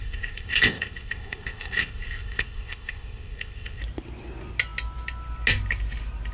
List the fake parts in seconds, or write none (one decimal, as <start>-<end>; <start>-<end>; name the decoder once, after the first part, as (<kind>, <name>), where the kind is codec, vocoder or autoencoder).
0.0-3.8 (codec, ZipCodec)